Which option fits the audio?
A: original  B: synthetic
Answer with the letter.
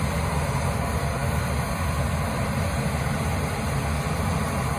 A